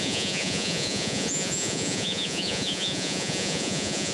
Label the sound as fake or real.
fake